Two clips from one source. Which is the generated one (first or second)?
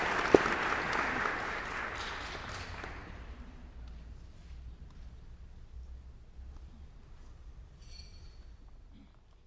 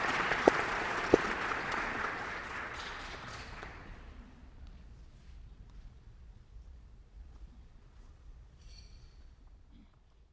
second